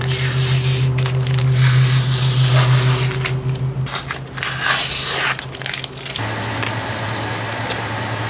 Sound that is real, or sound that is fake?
real